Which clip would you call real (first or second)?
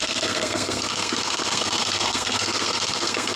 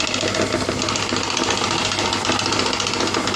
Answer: second